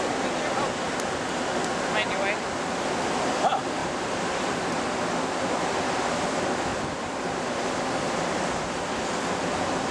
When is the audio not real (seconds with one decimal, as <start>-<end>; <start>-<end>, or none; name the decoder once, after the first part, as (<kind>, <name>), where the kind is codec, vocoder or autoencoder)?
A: 3.8-4.9 (vocoder, BigVGAN v2); 6.7-7.2